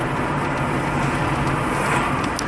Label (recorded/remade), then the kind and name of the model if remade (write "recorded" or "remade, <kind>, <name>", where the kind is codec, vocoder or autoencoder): recorded